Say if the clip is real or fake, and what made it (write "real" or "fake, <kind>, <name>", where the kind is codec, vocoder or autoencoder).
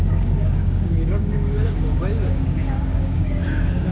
fake, codec, DAC